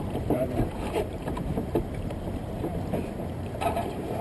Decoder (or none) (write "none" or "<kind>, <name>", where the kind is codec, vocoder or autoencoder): vocoder, BigVGAN v2